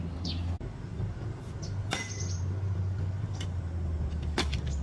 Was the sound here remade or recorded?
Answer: recorded